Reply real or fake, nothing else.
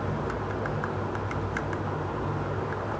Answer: real